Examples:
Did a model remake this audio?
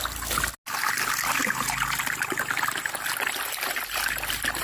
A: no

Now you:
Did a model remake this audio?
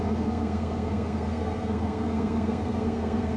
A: yes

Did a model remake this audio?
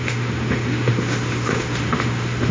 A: yes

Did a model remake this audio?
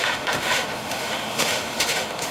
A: yes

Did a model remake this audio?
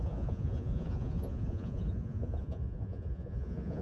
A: yes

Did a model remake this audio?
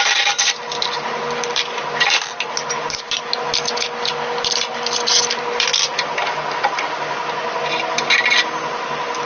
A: no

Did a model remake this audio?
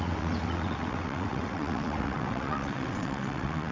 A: yes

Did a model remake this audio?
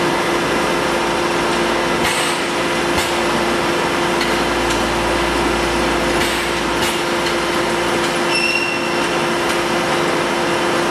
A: no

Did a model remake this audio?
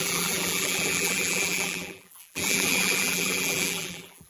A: yes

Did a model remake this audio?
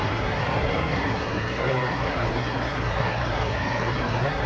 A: yes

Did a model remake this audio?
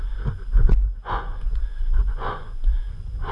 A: yes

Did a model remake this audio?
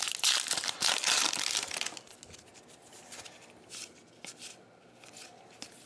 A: no